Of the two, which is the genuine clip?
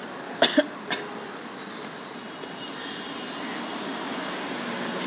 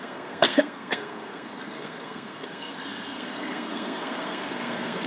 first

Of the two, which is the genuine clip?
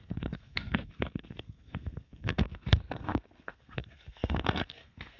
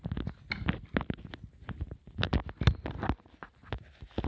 second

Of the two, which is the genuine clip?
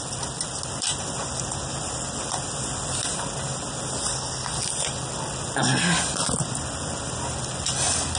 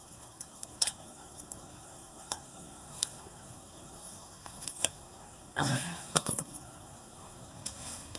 first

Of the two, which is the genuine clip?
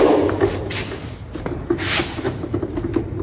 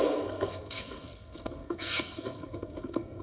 first